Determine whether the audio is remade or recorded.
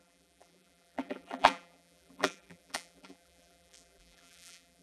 remade